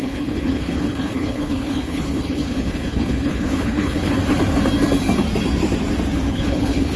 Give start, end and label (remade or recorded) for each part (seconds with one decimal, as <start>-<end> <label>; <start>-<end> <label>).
0.0-4.2 remade; 4.2-6.3 recorded; 6.3-7.0 remade